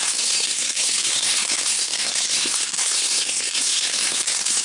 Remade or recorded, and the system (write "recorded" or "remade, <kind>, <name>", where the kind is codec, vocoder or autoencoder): remade, codec, SNAC